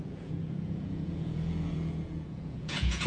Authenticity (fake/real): fake